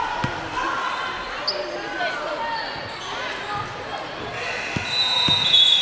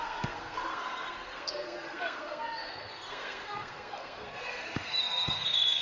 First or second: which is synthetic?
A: second